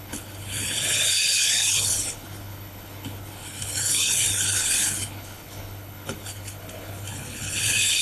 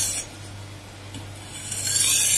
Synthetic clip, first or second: first